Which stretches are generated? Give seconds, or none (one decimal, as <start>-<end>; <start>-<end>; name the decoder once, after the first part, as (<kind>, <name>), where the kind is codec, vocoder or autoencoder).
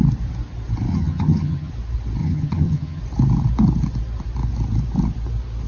0.9-1.7 (vocoder, HiFi-GAN); 2.2-3.0